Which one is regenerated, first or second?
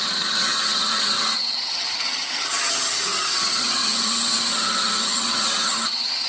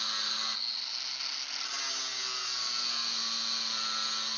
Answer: first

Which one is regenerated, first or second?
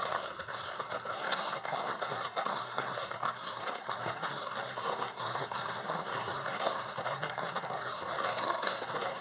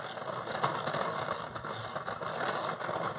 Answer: first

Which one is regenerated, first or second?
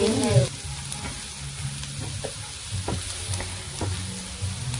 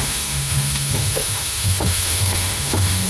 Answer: second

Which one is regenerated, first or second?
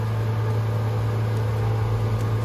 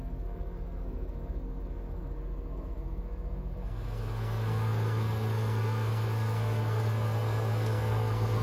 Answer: second